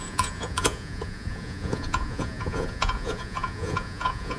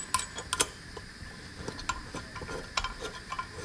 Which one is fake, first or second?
first